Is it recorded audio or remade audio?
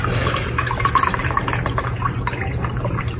remade